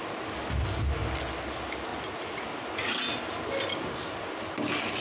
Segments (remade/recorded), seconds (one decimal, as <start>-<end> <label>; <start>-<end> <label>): 0.0-5.0 recorded